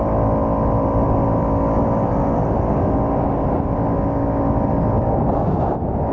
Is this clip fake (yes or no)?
no